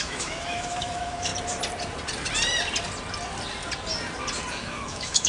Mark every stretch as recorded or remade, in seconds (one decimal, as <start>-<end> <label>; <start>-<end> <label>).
0.0-1.3 remade; 1.3-4.5 recorded; 4.5-5.3 remade